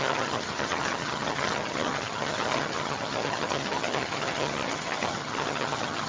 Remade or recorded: remade